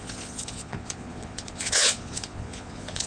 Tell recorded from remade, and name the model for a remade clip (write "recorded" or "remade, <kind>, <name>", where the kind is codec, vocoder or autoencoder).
remade, vocoder, Vocos